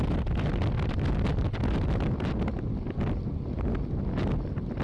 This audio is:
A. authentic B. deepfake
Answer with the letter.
A